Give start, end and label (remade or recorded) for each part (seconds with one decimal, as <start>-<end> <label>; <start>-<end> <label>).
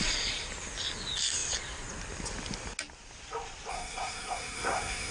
0.0-3.7 recorded; 3.7-5.1 remade